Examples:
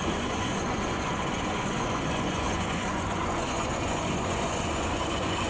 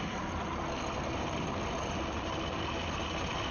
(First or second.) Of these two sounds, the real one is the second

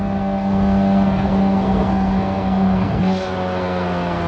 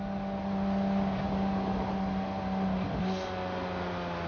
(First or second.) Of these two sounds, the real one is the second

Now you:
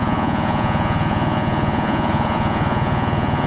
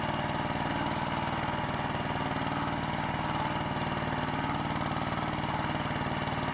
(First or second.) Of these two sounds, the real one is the second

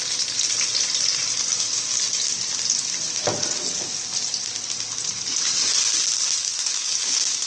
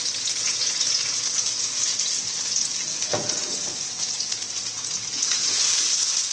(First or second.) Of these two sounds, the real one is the first